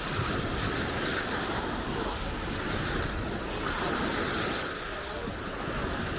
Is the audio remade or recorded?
recorded